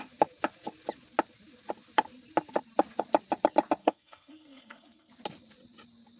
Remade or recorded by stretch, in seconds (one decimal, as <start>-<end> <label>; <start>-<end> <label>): 0.0-3.8 recorded; 3.8-5.1 remade; 5.1-6.2 recorded